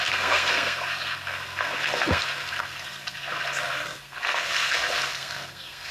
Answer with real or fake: fake